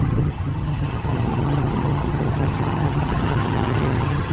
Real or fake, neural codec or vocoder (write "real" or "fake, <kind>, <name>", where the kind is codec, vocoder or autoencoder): fake, vocoder, HiFi-GAN